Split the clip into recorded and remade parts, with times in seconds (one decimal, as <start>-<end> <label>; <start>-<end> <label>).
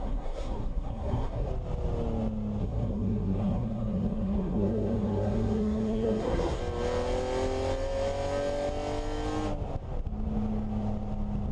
0.0-1.5 remade; 1.5-2.6 recorded; 2.6-6.6 remade; 6.6-11.5 recorded